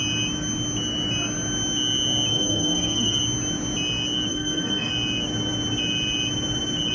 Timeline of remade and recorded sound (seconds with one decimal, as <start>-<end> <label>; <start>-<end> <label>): 0.0-2.3 recorded; 2.3-3.2 remade; 3.2-4.3 recorded; 4.3-4.9 remade; 4.9-6.9 recorded